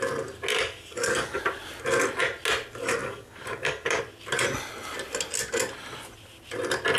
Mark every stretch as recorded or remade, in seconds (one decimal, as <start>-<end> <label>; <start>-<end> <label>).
0.0-0.5 recorded; 0.5-1.4 remade; 1.4-3.0 recorded; 3.0-4.0 remade; 4.0-7.0 recorded